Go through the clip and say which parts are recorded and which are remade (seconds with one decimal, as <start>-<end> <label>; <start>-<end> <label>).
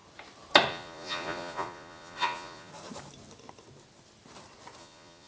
0.0-0.7 recorded; 0.7-2.7 remade; 2.7-4.8 recorded; 4.8-5.3 remade